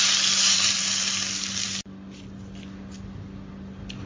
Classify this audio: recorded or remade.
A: recorded